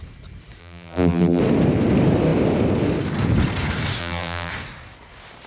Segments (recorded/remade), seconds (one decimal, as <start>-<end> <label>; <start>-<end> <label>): 0.0-0.6 recorded; 0.6-1.4 remade; 1.4-4.0 recorded; 4.0-4.5 remade; 4.5-5.5 recorded